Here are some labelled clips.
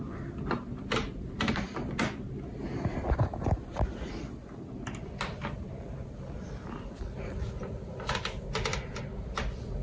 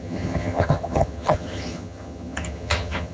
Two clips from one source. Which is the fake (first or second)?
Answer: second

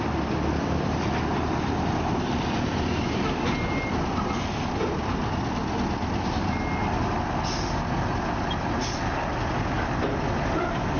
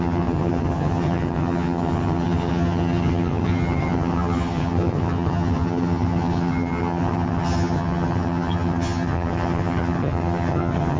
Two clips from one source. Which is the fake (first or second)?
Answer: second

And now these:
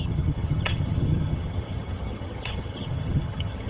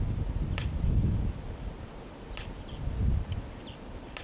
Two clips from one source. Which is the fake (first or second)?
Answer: first